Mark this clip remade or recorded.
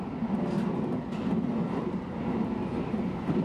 recorded